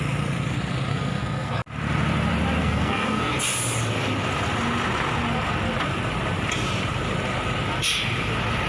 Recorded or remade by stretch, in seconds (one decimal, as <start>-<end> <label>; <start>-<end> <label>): 0.0-0.9 recorded; 0.9-1.6 remade; 1.6-2.6 recorded; 2.6-3.3 remade; 3.3-8.7 recorded